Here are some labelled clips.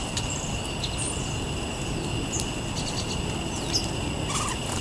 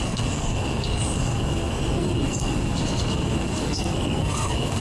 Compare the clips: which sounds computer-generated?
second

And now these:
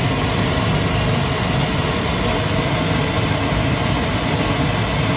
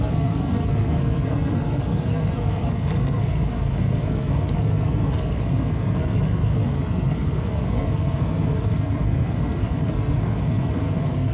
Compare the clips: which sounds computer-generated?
second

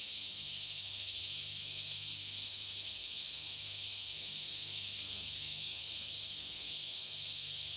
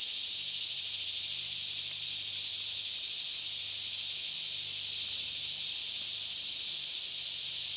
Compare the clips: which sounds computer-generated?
first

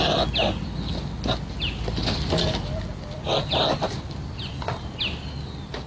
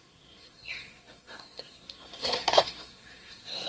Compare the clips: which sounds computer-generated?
second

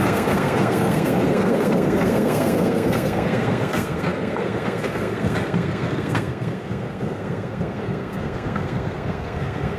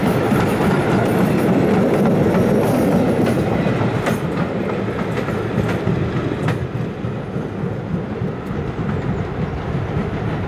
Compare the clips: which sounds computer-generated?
first